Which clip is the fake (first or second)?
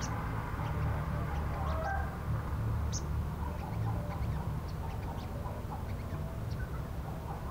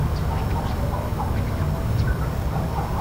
second